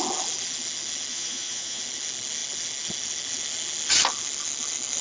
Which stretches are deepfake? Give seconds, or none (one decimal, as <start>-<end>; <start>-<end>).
1.1-1.8